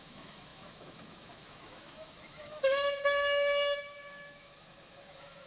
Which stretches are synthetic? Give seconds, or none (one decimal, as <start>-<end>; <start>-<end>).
0.0-5.5